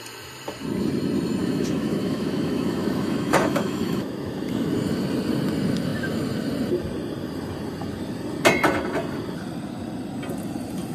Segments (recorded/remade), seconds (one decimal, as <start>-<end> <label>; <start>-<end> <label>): 0.0-1.4 recorded; 1.4-4.7 remade; 4.7-10.9 recorded